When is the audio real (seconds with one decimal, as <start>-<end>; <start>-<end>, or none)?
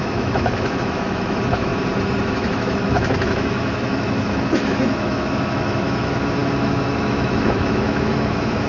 1.7-2.2